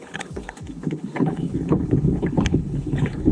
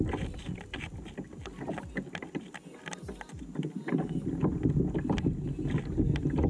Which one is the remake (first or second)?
first